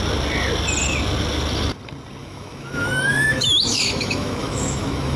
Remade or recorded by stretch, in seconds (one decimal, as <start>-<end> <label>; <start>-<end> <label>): 0.0-2.2 recorded; 2.2-5.2 remade